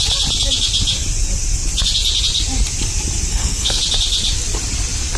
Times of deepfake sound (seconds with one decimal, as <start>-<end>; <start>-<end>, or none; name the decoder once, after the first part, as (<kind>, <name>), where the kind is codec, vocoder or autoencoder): 3.3-3.8 (codec, SNAC)